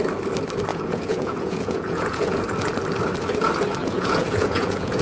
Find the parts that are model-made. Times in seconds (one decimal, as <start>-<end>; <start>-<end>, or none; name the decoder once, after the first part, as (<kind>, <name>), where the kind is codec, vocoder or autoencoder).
0.7-2.4 (vocoder, Vocos); 3.8-5.0